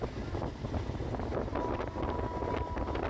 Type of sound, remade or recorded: recorded